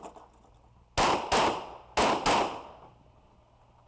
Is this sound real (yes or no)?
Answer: yes